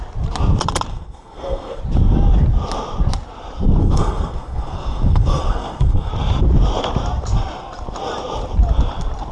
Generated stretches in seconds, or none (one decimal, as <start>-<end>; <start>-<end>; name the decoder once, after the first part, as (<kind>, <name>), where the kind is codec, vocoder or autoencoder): 0.9-1.8 (codec, SNAC); 3.8-6.1

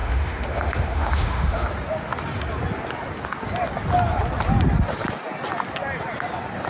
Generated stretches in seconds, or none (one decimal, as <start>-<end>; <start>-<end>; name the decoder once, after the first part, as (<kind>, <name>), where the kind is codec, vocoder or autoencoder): 0.0-1.7 (autoencoder, DAC-VAE)

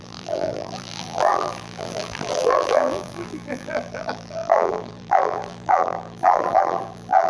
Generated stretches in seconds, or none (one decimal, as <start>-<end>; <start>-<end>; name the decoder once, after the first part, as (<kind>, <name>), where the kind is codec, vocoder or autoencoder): 0.0-7.3 (vocoder, BigVGAN v2)